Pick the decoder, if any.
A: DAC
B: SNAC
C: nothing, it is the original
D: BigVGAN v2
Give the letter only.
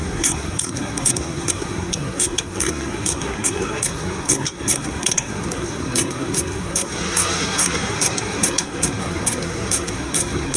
B